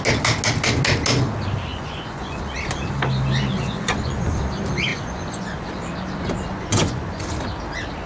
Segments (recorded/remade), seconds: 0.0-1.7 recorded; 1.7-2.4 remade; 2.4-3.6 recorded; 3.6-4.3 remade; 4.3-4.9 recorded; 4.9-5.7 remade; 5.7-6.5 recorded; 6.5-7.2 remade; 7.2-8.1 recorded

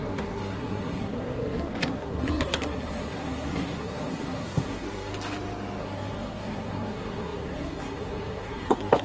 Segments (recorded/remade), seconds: 0.0-5.1 remade; 5.1-5.8 recorded; 5.8-9.0 remade

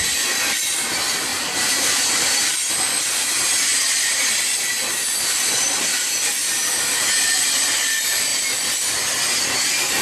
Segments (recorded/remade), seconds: 0.0-1.3 recorded; 1.3-2.6 remade; 2.6-10.0 recorded

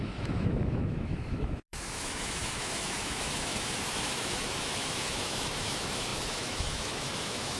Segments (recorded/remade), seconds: 0.0-7.6 remade

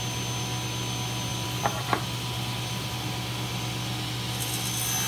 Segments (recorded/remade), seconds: 0.0-1.3 recorded; 1.3-2.9 remade; 2.9-5.1 recorded

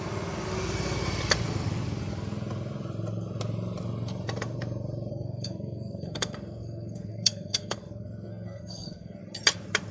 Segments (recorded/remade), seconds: 0.0-5.1 recorded; 5.1-9.2 remade; 9.2-9.9 recorded